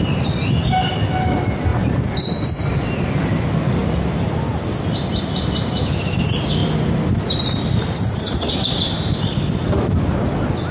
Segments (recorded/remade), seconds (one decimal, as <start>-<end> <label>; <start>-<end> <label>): 0.0-6.6 recorded; 6.6-8.5 remade; 8.5-10.7 recorded